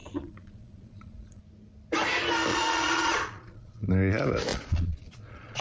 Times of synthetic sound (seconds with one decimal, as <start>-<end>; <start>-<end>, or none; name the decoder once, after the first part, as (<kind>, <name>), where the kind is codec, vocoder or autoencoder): 0.0-1.4 (vocoder, Vocos); 2.5-3.9; 4.5-5.6